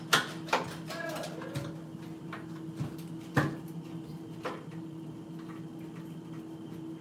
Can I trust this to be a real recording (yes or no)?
yes